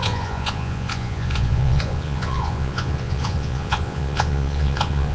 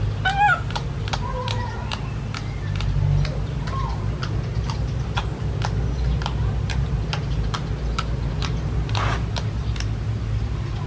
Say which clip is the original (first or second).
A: second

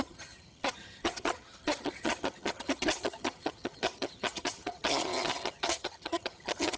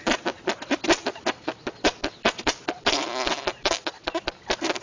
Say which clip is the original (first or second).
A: second